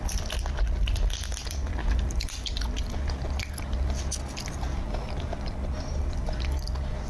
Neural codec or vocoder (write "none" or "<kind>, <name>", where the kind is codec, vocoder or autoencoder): none